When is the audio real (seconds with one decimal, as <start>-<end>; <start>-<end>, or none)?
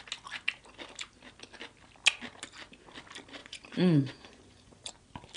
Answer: 0.0-3.4; 4.9-5.4